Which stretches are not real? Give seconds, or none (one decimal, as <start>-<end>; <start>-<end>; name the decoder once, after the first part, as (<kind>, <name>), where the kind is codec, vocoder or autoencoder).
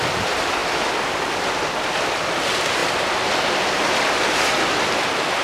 none